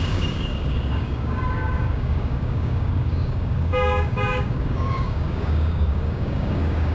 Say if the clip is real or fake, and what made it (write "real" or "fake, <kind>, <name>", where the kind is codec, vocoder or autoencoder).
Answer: fake, codec, DAC